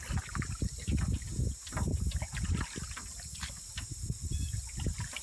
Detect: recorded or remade recorded